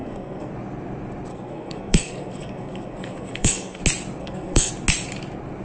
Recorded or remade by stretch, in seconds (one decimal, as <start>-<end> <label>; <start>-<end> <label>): 0.0-0.5 remade; 0.5-1.3 recorded; 1.3-3.8 remade; 3.8-4.2 recorded; 4.2-4.7 remade; 4.7-5.6 recorded